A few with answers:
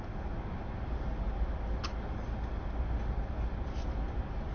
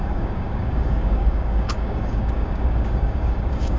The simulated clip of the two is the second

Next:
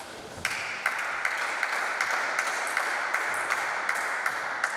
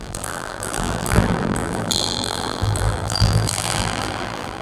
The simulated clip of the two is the second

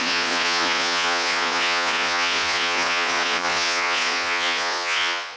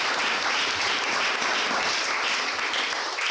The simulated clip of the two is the first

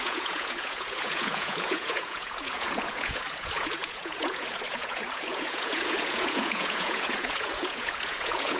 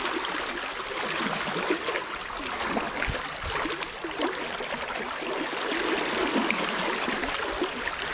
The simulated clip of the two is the first